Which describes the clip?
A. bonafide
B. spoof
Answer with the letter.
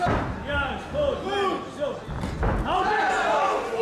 A